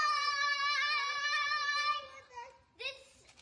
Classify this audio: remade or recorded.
remade